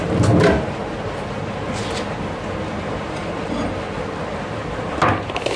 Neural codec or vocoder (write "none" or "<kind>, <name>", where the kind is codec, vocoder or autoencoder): none